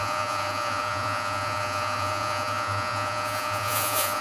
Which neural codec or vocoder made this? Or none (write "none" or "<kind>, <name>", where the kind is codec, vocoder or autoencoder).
vocoder, Vocos